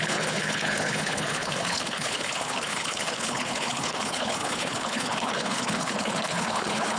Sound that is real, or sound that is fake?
fake